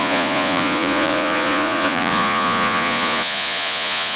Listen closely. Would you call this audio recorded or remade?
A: remade